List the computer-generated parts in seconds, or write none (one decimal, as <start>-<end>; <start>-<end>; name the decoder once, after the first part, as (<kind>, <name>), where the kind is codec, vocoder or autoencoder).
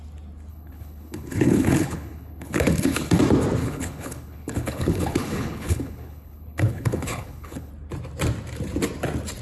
0.5-3.2 (codec, HILCodec); 3.6-7.7